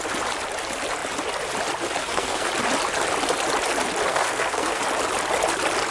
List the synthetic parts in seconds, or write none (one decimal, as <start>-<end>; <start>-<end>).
2.0-2.5; 4.1-4.8